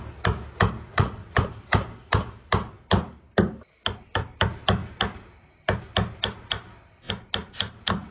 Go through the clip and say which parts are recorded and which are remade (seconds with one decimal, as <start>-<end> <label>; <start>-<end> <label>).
0.0-0.9 recorded; 0.9-1.5 remade; 1.5-8.1 recorded